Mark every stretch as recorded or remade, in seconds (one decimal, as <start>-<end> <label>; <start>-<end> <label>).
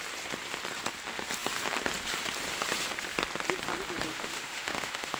0.0-4.1 recorded; 4.1-5.2 remade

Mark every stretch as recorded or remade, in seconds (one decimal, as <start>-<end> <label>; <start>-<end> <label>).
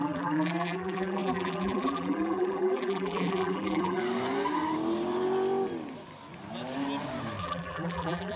0.0-4.0 remade; 4.0-7.4 recorded; 7.4-8.4 remade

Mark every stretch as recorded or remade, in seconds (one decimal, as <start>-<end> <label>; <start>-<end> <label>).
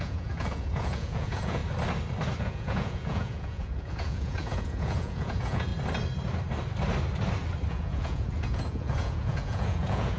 0.0-1.6 remade; 1.6-2.4 recorded; 2.4-5.7 remade; 5.7-7.7 recorded; 7.7-10.2 remade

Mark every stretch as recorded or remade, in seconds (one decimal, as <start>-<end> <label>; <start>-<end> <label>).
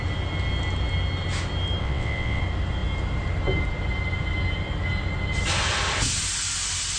0.0-1.8 recorded; 1.8-2.4 remade; 2.4-7.0 recorded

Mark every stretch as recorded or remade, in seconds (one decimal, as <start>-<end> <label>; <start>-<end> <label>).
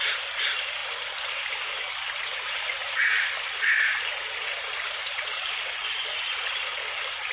0.0-2.3 recorded; 2.3-6.7 remade; 6.7-7.3 recorded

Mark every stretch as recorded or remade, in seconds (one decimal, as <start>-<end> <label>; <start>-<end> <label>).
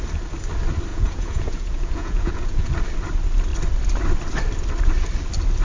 0.0-0.9 recorded; 0.9-2.7 remade; 2.7-5.6 recorded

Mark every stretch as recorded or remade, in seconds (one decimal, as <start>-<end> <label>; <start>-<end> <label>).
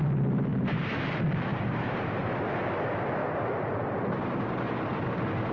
0.0-1.5 recorded; 1.5-2.5 remade; 2.5-3.2 recorded; 3.2-5.1 remade; 5.1-5.5 recorded